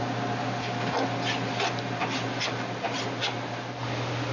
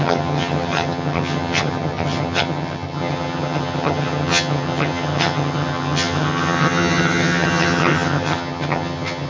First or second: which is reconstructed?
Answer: second